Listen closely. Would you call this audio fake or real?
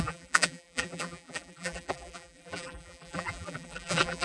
fake